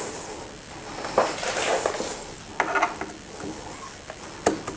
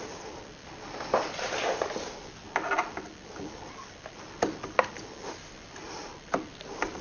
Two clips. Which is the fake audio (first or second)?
second